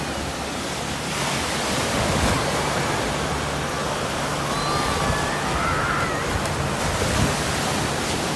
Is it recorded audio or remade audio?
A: recorded